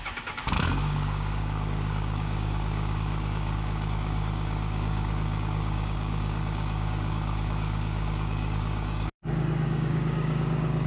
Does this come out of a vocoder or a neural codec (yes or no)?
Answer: yes